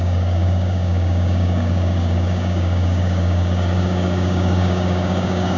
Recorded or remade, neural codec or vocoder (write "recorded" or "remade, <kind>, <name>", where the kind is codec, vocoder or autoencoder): remade, codec, DAC